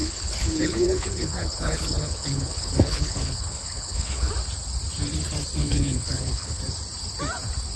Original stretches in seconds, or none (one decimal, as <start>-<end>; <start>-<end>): 4.3-5.6; 6.6-7.8